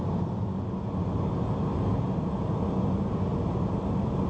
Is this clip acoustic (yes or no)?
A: yes